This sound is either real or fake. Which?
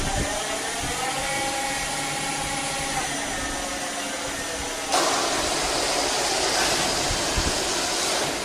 real